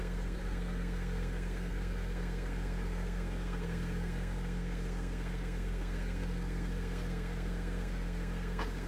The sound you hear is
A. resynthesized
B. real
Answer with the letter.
A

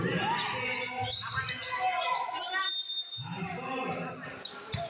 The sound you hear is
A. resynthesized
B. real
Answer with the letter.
B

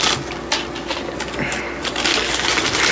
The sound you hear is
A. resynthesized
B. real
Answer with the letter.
B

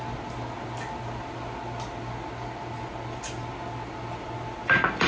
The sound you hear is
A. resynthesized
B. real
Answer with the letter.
B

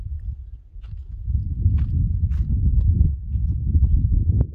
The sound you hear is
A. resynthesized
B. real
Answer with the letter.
B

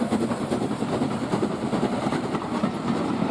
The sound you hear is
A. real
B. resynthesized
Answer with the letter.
A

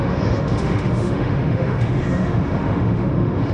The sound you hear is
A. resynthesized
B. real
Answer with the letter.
A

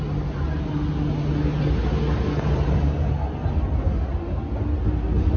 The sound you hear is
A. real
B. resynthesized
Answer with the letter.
A